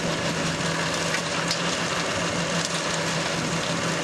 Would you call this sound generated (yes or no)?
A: no